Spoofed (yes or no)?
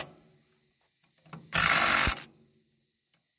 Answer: no